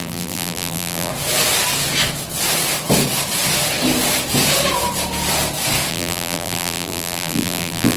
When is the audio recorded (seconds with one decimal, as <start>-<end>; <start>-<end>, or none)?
1.1-5.9

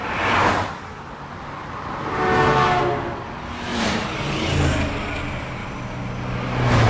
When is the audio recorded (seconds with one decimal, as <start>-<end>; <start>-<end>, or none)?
0.0-3.7; 4.7-6.9

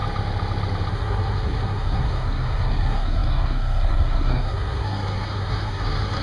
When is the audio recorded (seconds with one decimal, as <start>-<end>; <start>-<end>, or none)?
0.0-0.9

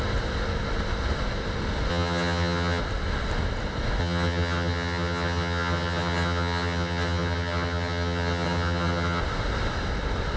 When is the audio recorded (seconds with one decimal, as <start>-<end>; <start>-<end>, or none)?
0.0-1.9; 2.8-4.0; 9.2-10.4

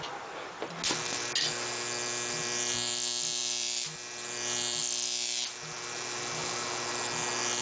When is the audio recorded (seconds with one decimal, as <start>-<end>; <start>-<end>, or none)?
0.0-7.6